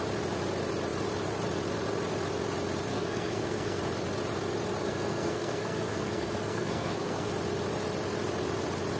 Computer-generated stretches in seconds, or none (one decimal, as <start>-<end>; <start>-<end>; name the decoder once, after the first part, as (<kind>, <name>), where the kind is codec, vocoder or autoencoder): 2.9-3.8 (codec, SNAC); 4.8-7.3